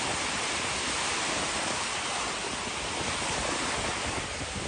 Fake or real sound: real